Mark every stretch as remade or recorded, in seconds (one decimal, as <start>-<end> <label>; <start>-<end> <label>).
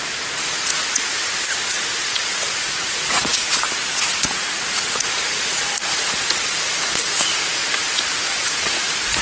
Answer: 0.0-7.6 remade; 7.6-8.5 recorded; 8.5-9.2 remade